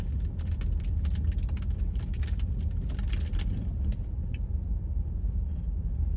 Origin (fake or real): real